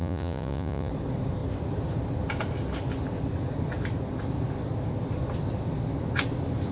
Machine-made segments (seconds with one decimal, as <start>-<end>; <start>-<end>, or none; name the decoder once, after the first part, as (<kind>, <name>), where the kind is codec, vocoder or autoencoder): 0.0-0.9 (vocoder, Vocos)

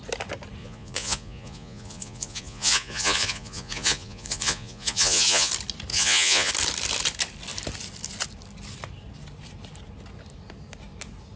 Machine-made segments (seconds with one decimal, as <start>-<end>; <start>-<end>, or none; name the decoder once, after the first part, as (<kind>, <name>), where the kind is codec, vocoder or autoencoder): 0.6-5.5 (vocoder, Vocos); 5.9-6.5

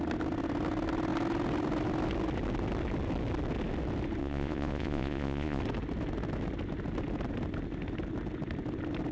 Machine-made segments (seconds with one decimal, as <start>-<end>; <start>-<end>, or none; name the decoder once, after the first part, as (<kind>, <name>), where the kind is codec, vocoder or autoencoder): 4.2-5.6 (vocoder, Vocos)